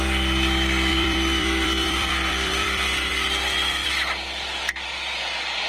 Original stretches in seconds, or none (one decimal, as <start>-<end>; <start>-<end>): 0.0-0.9; 3.9-5.7